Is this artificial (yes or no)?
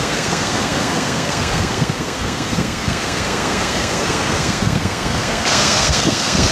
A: yes